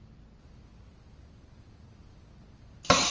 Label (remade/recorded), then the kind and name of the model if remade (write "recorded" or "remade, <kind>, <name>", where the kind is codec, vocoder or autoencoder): recorded